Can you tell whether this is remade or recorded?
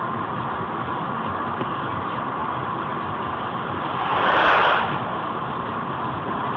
recorded